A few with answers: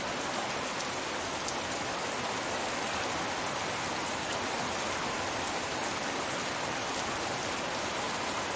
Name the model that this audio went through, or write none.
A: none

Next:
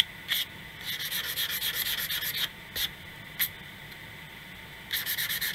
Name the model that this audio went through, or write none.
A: none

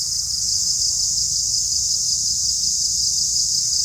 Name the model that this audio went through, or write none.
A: none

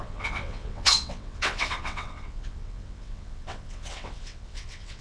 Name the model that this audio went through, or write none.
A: vocoder, WaveNeXt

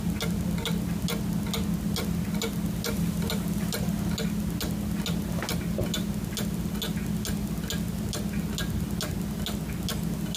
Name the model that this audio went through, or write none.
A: none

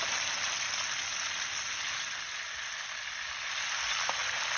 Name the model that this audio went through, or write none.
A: none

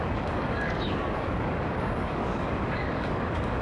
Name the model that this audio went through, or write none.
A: codec, DAC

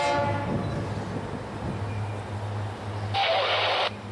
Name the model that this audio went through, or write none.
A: none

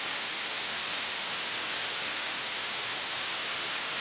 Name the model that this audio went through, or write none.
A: autoencoder, DAC-VAE